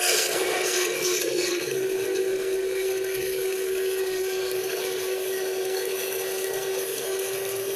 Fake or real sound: fake